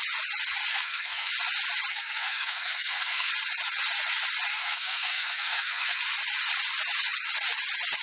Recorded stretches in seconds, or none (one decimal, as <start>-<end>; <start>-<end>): 0.0-0.7; 1.3-1.9; 3.3-4.5; 6.0-8.0